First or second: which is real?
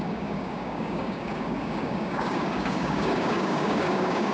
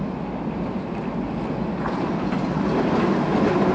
second